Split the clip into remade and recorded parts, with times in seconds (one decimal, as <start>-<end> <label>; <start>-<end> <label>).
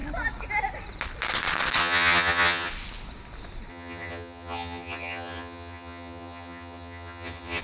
0.0-1.8 recorded; 1.8-2.7 remade; 2.7-3.7 recorded; 3.7-7.6 remade